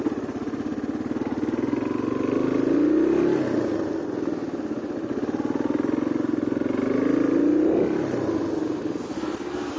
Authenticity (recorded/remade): recorded